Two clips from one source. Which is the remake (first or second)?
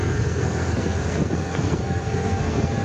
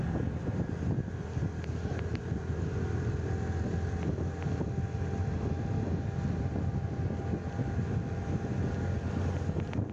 first